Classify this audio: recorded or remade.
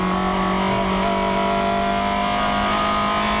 recorded